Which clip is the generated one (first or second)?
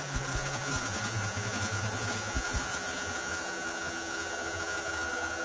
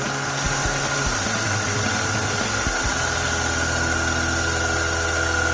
first